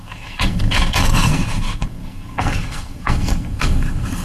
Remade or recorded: remade